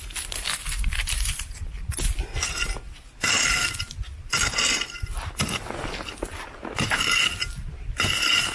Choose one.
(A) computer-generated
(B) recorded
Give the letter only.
B